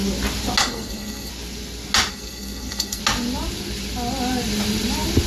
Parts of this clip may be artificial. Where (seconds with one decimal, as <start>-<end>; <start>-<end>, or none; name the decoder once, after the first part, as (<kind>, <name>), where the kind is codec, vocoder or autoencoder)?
0.6-1.3 (codec, SNAC); 2.1-3.0